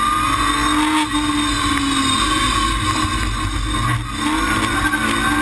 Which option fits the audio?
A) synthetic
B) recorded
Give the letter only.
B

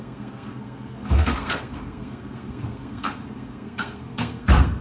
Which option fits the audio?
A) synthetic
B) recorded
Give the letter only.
A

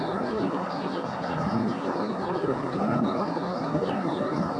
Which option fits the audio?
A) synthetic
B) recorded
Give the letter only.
A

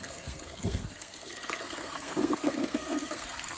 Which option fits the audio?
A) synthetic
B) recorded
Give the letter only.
A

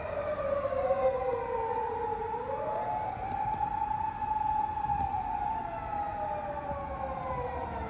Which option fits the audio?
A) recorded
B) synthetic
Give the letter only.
A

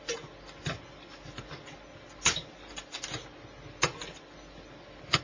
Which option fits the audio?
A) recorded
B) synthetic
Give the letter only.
A